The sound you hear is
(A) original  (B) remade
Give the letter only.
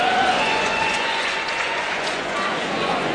B